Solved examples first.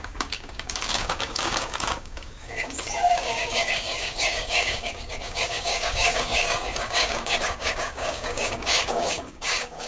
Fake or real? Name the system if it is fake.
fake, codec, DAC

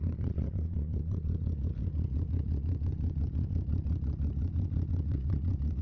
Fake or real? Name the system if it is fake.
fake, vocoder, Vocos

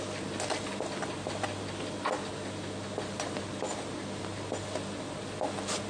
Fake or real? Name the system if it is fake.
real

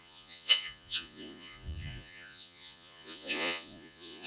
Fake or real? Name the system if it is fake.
fake, vocoder, Vocos